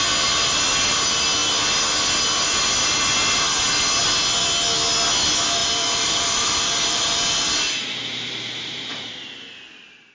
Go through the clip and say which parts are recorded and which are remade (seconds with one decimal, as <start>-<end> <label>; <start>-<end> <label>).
0.0-5.6 recorded; 5.6-9.1 remade; 9.1-10.1 recorded